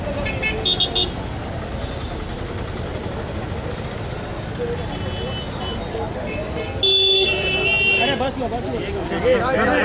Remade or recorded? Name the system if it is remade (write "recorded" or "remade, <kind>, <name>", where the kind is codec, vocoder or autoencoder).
recorded